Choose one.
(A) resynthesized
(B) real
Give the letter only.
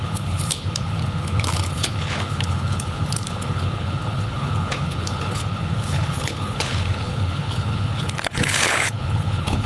A